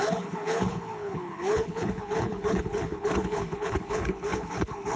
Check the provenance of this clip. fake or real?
fake